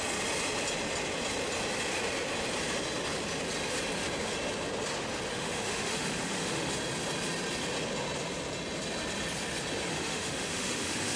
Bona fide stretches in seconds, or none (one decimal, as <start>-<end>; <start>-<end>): 0.0-5.3; 6.7-9.9